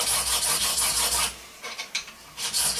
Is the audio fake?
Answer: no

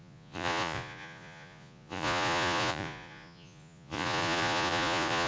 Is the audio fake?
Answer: yes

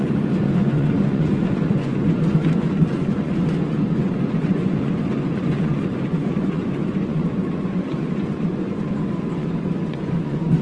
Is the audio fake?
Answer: yes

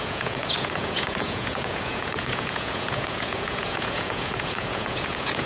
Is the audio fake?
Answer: yes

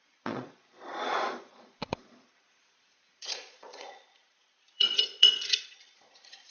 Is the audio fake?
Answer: yes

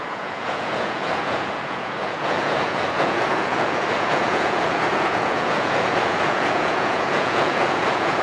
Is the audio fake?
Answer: yes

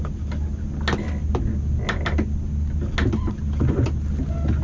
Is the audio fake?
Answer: no